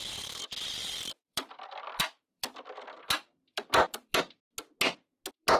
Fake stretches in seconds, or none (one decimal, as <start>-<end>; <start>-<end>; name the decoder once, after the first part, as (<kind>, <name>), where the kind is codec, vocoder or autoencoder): 0.8-4.2 (vocoder, BigVGAN v2)